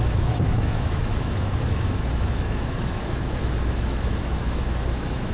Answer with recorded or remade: remade